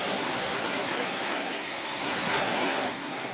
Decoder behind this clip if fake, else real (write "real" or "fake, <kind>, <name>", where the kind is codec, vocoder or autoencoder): fake, codec, SNAC